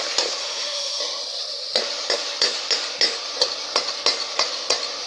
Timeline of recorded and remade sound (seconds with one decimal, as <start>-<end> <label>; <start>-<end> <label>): 0.0-0.4 recorded; 0.4-1.0 remade; 1.0-5.1 recorded